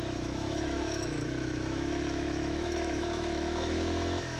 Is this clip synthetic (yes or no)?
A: yes